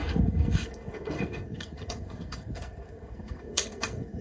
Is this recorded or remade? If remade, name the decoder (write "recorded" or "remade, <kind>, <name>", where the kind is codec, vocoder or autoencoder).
remade, codec, SNAC